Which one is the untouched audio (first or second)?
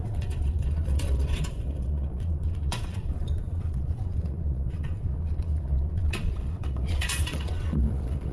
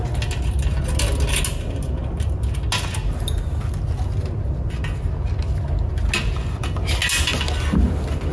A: second